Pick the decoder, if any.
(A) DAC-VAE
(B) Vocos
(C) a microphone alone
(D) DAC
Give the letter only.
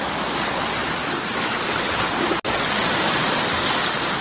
C